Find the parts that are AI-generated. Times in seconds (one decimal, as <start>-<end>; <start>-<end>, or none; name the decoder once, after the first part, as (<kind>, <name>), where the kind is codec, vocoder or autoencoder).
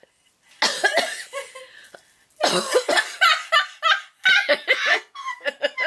4.9-5.5 (codec, SNAC)